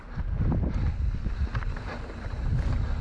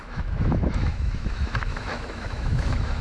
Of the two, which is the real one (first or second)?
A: first